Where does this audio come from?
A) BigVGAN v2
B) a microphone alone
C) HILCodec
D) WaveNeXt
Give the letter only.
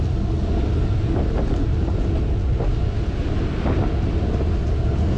B